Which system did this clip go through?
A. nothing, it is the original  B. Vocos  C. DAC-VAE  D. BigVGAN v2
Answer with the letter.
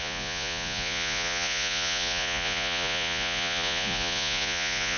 B